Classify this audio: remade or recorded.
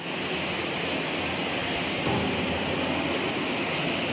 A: recorded